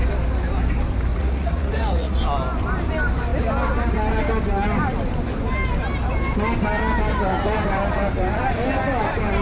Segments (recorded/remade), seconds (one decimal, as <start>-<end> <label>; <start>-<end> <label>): 0.0-1.1 recorded; 1.1-2.2 remade; 2.2-9.4 recorded